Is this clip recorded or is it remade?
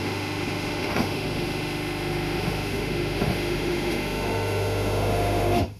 remade